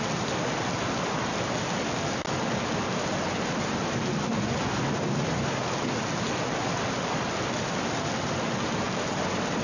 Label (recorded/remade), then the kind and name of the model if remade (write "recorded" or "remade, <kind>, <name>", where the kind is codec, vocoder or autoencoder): recorded